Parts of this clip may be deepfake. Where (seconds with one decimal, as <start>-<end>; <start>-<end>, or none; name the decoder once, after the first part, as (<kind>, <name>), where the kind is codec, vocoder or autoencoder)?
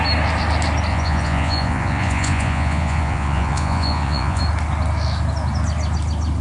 0.9-4.4 (vocoder, Vocos)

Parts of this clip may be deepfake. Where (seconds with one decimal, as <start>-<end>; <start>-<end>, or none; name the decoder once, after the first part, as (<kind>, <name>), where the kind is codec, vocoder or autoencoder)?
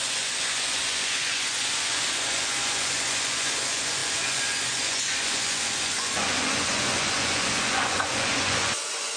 0.0-9.2 (vocoder, Vocos)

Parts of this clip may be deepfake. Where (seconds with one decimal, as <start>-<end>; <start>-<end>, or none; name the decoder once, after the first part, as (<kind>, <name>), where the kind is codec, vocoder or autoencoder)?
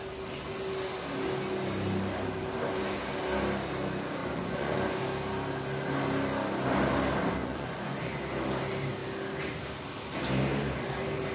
4.2-5.0 (vocoder, Vocos); 7.4-8.2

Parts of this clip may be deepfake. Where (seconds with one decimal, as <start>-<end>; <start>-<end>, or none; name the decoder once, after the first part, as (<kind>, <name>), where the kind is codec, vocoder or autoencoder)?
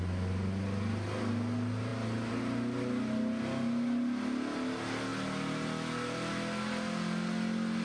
none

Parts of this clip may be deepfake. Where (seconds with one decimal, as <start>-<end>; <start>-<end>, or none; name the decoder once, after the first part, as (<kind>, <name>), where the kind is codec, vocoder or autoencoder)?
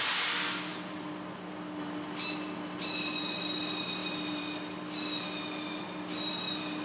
none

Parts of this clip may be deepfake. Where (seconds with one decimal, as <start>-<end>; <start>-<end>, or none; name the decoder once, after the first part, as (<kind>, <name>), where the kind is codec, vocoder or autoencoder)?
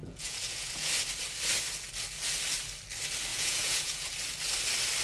0.0-0.9 (vocoder, Vocos); 3.3-4.1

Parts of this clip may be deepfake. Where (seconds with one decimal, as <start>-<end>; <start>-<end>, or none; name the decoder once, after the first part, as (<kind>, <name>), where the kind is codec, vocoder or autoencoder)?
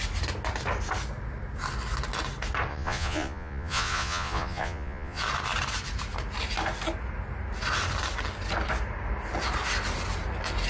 2.7-5.2 (vocoder, Vocos)